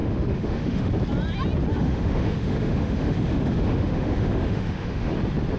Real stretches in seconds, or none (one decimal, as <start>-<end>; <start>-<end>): 0.9-1.7; 5.1-5.6